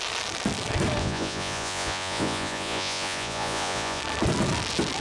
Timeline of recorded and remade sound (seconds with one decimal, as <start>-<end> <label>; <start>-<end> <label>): 0.0-1.0 recorded; 1.0-4.0 remade; 4.0-5.0 recorded